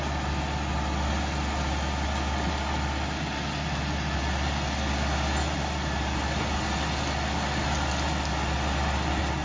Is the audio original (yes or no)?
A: yes